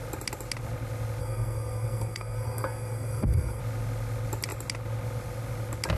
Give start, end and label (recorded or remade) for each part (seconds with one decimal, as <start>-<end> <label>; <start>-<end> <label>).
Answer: 0.0-1.2 recorded; 1.2-3.6 remade; 3.6-6.0 recorded